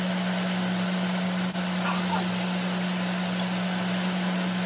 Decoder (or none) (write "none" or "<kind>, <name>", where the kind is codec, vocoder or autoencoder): none